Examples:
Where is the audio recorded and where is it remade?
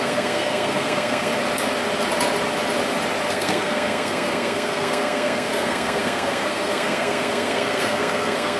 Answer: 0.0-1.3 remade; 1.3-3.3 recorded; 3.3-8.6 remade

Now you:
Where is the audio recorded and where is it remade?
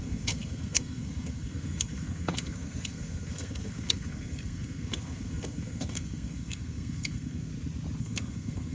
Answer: 0.0-7.5 remade; 7.5-8.0 recorded; 8.0-8.7 remade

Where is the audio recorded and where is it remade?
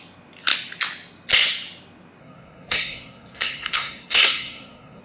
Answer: 0.0-2.2 recorded; 2.2-5.0 remade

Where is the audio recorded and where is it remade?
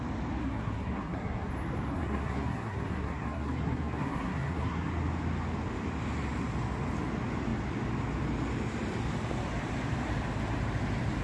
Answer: 0.0-0.4 recorded; 0.4-1.5 remade; 1.5-1.9 recorded; 1.9-4.9 remade; 4.9-11.2 recorded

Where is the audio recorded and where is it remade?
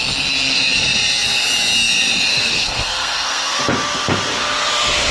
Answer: 0.0-2.3 recorded; 2.3-3.6 remade; 3.6-5.1 recorded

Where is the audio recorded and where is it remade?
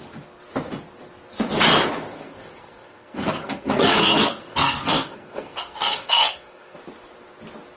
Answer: 0.0-2.1 recorded; 2.1-6.8 remade; 6.8-7.8 recorded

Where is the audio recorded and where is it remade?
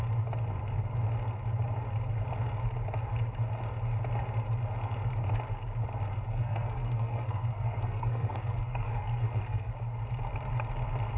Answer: 0.0-6.3 recorded; 6.3-9.7 remade; 9.7-11.2 recorded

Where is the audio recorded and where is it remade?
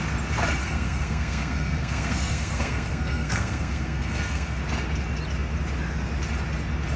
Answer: 0.0-0.6 recorded; 0.6-4.6 remade; 4.6-7.0 recorded